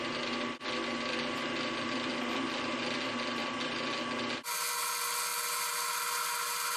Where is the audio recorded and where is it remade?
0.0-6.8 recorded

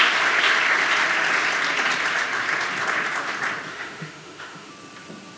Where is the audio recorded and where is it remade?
0.0-3.7 recorded; 3.7-4.7 remade; 4.7-5.4 recorded

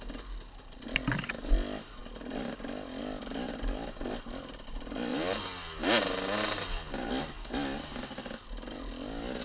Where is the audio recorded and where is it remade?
0.0-9.4 recorded